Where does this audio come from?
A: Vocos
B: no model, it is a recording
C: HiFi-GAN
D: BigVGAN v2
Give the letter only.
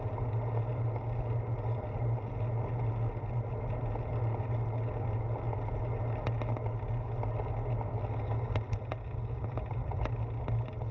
B